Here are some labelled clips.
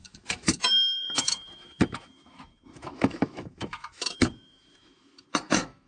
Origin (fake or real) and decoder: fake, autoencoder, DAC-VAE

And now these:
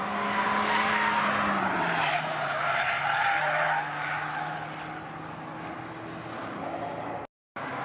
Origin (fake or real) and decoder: real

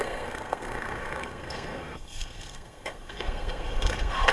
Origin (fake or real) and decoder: fake, codec, SNAC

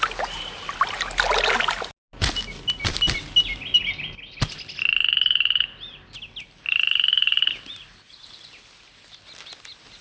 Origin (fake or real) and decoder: real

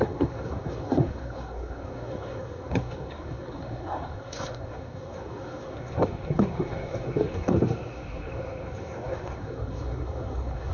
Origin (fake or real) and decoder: fake, codec, SNAC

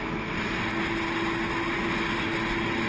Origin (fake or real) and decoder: real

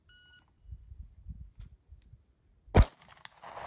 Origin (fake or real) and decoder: real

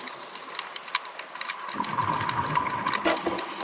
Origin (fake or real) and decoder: real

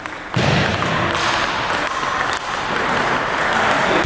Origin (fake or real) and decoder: real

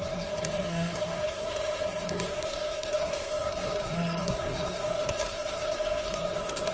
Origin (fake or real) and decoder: fake, codec, SNAC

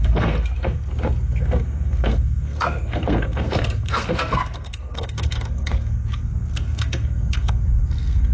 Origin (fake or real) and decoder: fake, codec, SNAC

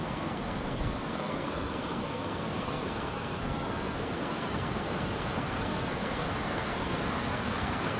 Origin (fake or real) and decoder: fake, codec, SNAC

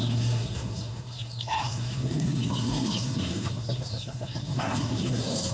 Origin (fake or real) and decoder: fake, codec, SNAC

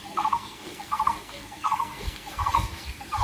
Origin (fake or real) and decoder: fake, codec, SNAC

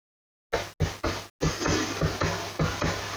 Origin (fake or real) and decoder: real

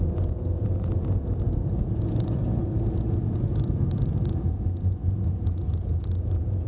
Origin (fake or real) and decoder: fake, vocoder, Vocos